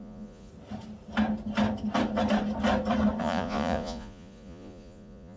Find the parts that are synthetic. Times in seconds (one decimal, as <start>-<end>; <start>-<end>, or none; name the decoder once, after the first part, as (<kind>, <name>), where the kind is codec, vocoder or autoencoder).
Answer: 0.0-0.5 (vocoder, Vocos); 3.2-5.4